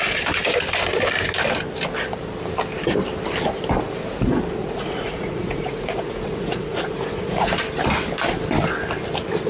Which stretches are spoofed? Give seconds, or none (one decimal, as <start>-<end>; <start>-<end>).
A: 4.6-7.5